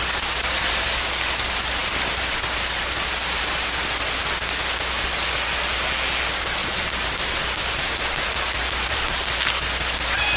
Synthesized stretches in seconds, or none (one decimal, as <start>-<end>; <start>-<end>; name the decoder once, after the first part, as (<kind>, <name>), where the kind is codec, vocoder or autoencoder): 1.8-2.4 (vocoder, BigVGAN v2); 6.6-9.6